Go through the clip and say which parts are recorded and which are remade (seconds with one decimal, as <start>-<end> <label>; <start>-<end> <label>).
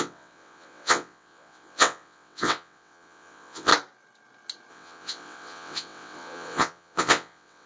0.0-3.7 remade; 3.7-4.7 recorded; 4.7-7.7 remade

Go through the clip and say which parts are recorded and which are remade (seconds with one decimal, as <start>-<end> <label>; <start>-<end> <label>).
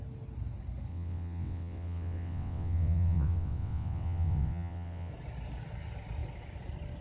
0.0-0.9 recorded; 0.9-5.1 remade; 5.1-7.0 recorded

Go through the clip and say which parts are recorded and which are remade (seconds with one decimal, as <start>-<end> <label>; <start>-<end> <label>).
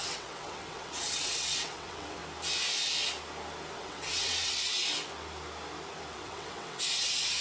0.0-2.2 remade; 2.2-3.8 recorded; 3.8-4.8 remade; 4.8-6.1 recorded; 6.1-7.4 remade